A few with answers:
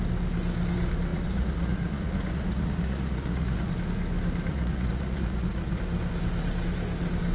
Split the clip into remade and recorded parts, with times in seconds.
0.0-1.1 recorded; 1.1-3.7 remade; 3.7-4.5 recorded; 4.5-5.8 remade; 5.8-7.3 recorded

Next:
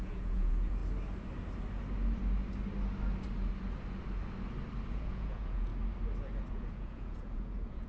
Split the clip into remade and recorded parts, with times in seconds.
0.0-0.8 remade; 0.8-4.9 recorded; 4.9-5.7 remade; 5.7-6.5 recorded; 6.5-7.9 remade

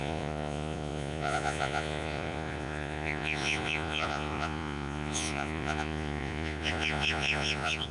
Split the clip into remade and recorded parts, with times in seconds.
0.0-7.9 remade

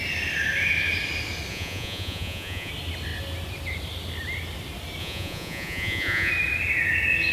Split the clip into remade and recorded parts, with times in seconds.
0.0-1.5 recorded; 1.5-2.7 remade; 2.7-5.0 recorded; 5.0-6.3 remade; 6.3-7.3 recorded

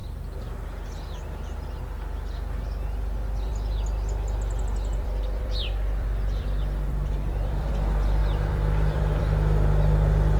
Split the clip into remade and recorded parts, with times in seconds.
0.0-3.5 recorded; 3.5-7.7 remade; 7.7-8.2 recorded; 8.2-9.2 remade; 9.2-10.4 recorded

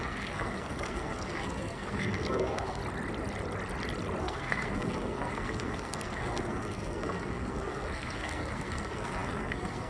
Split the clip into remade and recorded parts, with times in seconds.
0.0-2.8 remade; 2.8-4.2 recorded; 4.2-9.9 remade